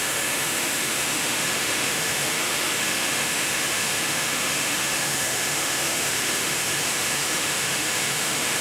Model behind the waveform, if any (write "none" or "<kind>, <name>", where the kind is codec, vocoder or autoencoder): autoencoder, DAC-VAE